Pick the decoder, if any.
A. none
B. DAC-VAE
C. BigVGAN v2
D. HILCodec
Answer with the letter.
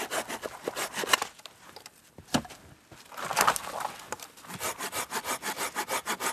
A